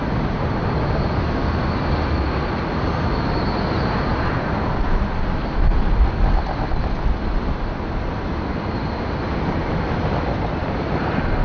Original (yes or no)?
yes